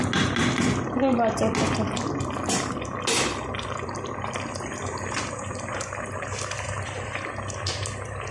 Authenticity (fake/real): real